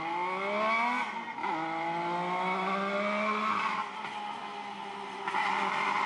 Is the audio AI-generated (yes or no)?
no